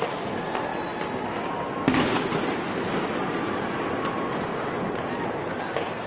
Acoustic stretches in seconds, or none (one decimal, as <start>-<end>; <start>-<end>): 0.0-6.1